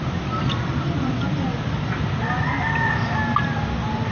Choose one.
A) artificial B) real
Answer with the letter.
B